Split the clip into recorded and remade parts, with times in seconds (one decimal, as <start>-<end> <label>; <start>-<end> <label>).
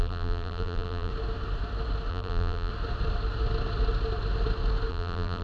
0.0-1.1 remade; 1.1-2.1 recorded; 2.1-2.7 remade; 2.7-4.9 recorded; 4.9-5.4 remade